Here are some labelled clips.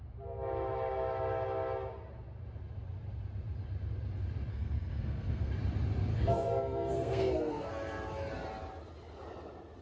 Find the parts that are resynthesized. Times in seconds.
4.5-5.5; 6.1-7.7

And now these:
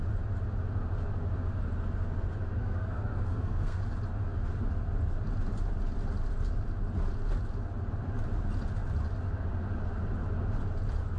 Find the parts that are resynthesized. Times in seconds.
2.6-3.8

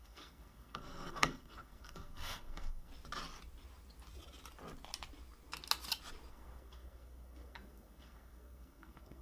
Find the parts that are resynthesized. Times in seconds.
0.0-2.9; 6.3-9.2

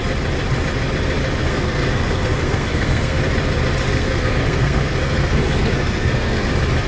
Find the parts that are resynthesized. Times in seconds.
1.4-3.2; 3.9-6.5

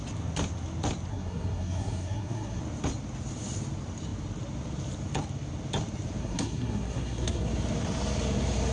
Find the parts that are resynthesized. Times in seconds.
1.1-2.6; 6.2-7.5